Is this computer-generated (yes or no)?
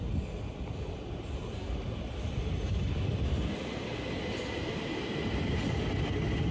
no